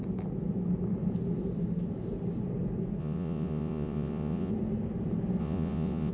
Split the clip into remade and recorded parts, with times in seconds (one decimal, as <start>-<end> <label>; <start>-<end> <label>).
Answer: 0.0-3.0 recorded; 3.0-4.5 remade; 4.5-5.4 recorded; 5.4-6.1 remade